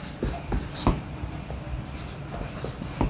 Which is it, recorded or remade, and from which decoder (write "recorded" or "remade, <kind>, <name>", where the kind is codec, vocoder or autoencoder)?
recorded